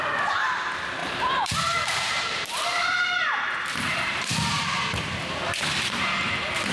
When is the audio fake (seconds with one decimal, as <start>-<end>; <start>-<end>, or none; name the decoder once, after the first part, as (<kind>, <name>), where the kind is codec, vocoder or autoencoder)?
1.0-5.0 (vocoder, BigVGAN v2)